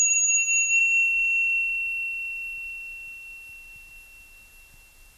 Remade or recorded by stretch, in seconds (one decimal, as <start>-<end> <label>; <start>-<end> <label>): 0.0-5.2 recorded